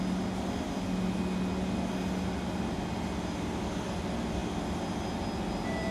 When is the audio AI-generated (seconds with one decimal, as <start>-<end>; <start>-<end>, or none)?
none